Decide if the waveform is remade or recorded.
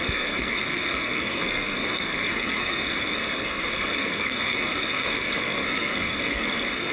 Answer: remade